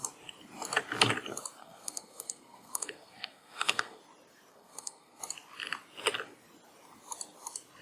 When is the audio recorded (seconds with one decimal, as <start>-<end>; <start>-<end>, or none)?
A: 0.0-1.6; 4.0-4.5; 5.2-7.8